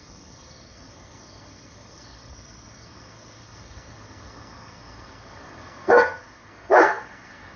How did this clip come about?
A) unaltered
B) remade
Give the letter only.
B